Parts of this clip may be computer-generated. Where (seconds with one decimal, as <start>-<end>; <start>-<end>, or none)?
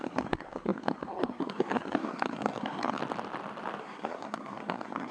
0.0-3.0; 3.8-5.1